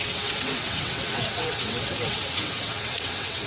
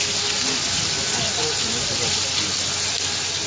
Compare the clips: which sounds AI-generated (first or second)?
first